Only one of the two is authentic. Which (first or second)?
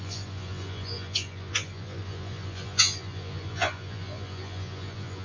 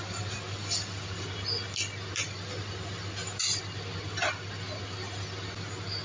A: second